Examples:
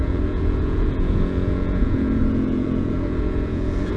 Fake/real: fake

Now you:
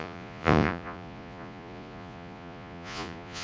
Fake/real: fake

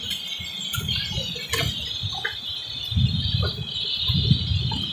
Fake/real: real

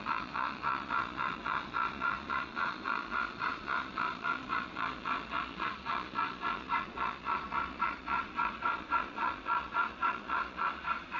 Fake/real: fake